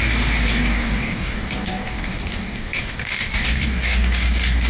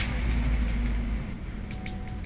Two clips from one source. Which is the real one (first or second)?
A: second